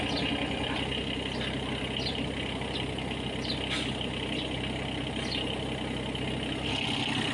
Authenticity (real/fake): real